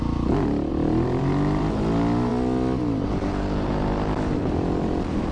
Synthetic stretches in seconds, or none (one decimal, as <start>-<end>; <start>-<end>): 0.7-1.8